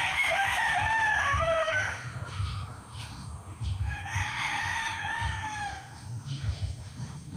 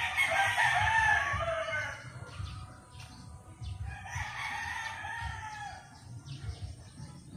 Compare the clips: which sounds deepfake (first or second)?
first